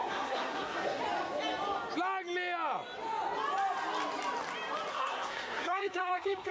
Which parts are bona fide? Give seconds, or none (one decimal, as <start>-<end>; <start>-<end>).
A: 1.0-4.9